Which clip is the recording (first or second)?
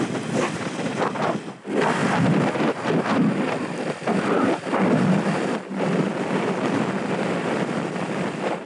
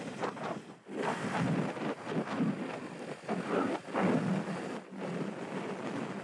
second